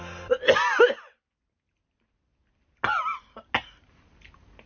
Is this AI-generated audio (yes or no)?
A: no